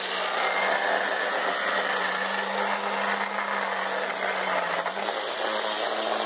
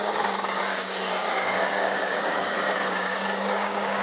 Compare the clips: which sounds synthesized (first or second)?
second